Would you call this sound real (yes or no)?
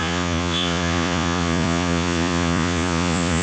no